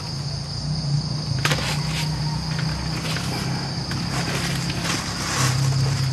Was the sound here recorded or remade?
recorded